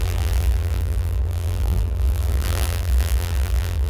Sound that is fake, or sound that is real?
fake